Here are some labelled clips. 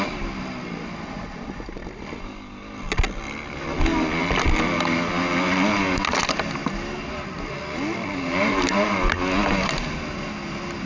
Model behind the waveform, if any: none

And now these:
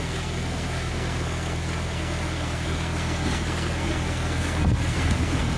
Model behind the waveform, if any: codec, SNAC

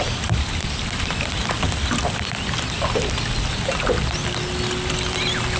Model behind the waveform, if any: none